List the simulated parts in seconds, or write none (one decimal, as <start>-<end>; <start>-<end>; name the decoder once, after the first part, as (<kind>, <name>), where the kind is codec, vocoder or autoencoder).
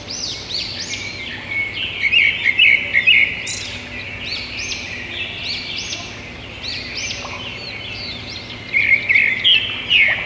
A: none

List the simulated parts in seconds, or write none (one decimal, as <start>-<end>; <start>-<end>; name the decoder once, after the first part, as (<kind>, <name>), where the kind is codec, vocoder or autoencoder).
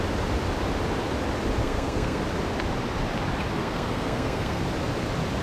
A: 1.6-2.2 (codec, SNAC); 3.6-4.6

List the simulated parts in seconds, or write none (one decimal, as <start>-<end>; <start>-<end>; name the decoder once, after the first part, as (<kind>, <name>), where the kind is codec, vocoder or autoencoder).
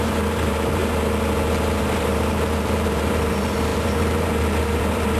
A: 0.0-0.8 (vocoder, BigVGAN v2); 1.8-5.2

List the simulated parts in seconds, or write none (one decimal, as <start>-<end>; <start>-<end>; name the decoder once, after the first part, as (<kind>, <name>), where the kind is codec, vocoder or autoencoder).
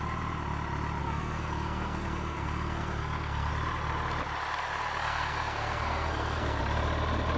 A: 1.0-3.5 (codec, SNAC); 5.0-6.6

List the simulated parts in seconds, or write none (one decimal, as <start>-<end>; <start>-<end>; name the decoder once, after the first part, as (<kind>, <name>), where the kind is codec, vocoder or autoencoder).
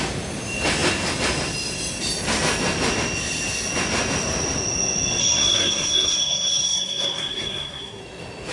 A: 5.2-8.0 (codec, SNAC)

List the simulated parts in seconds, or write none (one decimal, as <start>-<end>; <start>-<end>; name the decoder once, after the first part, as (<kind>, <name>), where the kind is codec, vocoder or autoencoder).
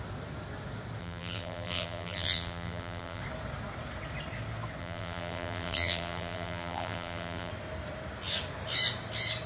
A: 1.0-3.2 (vocoder, BigVGAN v2); 4.8-7.5